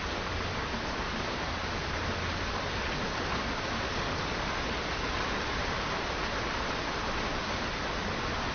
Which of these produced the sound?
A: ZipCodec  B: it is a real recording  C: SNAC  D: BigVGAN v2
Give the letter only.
B